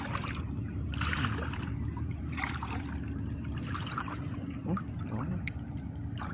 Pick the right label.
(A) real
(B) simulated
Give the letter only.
B